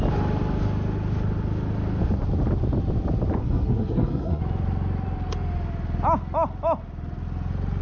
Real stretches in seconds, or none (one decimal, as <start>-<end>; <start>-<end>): 0.0-3.4; 4.4-7.8